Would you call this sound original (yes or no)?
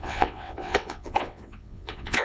no